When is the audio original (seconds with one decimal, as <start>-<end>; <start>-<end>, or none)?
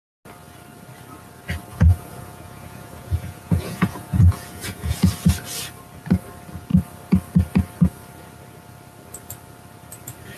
0.0-1.7; 5.1-10.4